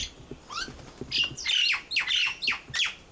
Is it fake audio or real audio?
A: real